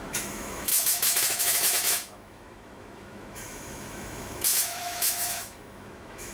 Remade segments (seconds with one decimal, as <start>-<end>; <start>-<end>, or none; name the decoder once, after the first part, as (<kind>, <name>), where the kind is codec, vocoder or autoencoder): 0.0-6.3 (autoencoder, DAC-VAE)